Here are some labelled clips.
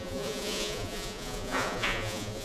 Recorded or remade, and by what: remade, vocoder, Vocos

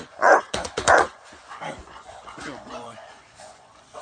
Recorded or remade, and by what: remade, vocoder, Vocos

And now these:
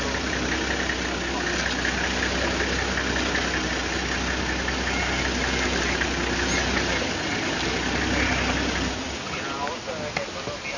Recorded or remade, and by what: recorded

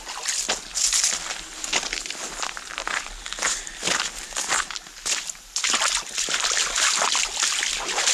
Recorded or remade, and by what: recorded